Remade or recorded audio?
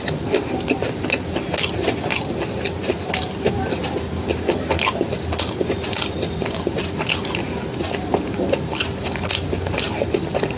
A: recorded